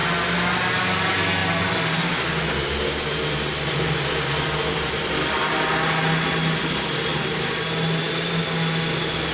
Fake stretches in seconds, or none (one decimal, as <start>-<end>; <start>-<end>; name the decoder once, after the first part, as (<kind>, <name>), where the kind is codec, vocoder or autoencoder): none